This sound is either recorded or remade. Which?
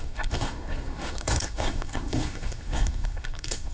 remade